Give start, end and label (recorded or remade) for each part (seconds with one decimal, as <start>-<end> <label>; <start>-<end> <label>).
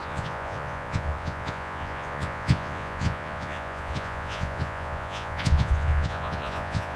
0.0-7.0 remade